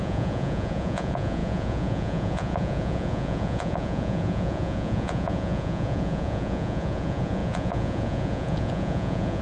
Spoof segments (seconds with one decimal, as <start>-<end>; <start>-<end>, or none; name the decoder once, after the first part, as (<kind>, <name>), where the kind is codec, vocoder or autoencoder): 0.0-9.4 (vocoder, Vocos)